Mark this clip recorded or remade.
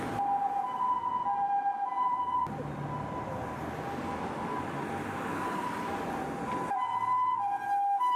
recorded